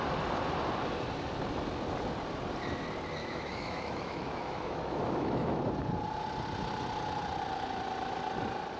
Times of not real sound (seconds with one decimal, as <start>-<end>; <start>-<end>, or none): 3.2-5.6

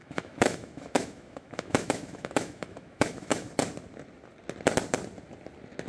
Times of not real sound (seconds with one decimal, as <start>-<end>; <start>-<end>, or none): 0.0-3.5

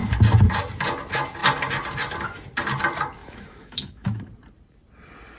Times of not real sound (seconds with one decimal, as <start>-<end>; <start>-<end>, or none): 3.2-4.2